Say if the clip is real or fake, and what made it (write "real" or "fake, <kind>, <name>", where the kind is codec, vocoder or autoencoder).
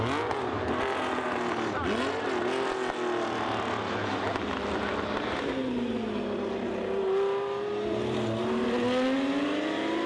real